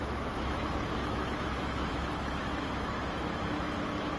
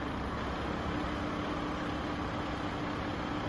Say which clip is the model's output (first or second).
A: first